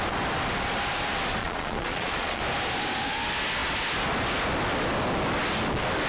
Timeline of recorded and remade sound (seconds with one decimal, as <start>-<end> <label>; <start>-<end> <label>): 0.0-1.4 recorded; 1.4-2.4 remade; 2.4-6.1 recorded